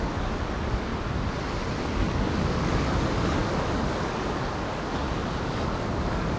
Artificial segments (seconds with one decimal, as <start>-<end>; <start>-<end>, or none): 0.0-0.9; 1.8-6.4

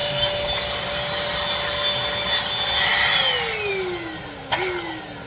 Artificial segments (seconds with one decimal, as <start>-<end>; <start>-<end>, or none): none

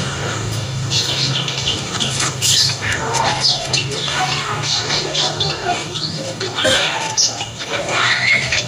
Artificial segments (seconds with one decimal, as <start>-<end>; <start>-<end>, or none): 0.0-8.7

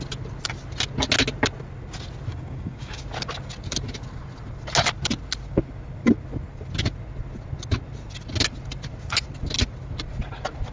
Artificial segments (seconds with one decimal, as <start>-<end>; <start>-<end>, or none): 2.3-3.0

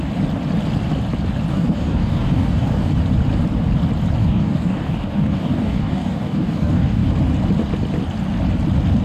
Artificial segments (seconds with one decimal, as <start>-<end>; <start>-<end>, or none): 1.5-2.9; 4.2-7.1

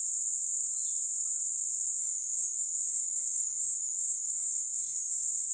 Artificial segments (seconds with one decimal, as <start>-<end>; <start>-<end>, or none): 2.0-5.5